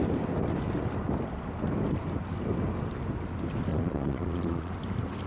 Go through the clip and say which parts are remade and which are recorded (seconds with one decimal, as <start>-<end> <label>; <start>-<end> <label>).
0.0-3.7 recorded; 3.7-4.7 remade; 4.7-5.3 recorded